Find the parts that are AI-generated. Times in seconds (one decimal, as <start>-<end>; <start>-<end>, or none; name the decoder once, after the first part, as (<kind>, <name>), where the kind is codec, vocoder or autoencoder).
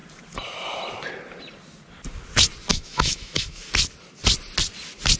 2.7-3.6 (autoencoder, DAC-VAE)